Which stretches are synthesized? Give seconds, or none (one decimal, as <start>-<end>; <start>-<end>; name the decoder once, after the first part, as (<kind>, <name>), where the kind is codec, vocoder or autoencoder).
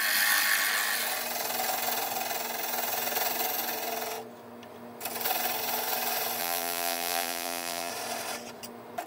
6.4-7.9 (vocoder, BigVGAN v2)